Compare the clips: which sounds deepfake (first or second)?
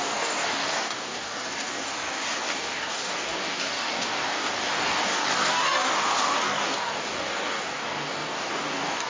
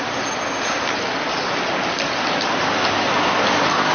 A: first